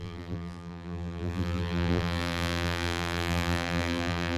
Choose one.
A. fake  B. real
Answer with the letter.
A